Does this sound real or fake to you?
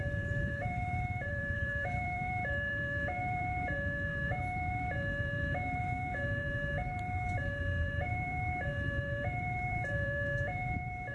fake